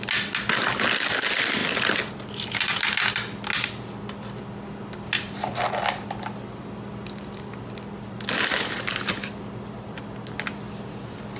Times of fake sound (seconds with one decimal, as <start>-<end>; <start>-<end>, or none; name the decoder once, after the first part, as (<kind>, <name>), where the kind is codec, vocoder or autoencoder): 1.6-2.1 (vocoder, BigVGAN v2)